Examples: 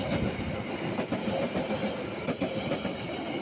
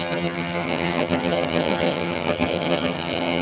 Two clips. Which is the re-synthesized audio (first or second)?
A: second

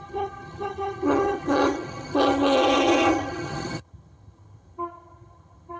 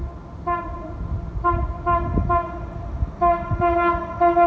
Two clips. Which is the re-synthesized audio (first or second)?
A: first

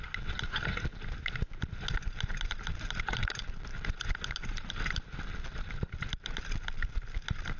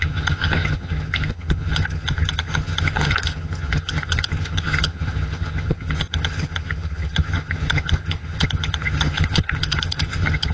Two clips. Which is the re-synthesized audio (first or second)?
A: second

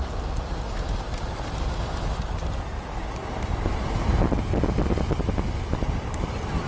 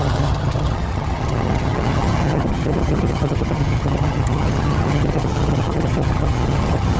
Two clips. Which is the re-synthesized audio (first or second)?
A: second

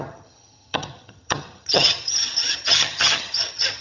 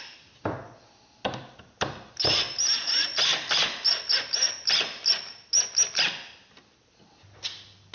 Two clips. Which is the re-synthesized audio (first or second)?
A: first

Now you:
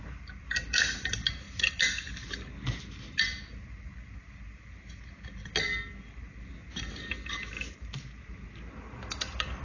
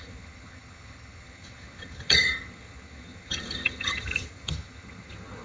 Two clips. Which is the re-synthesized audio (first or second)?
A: second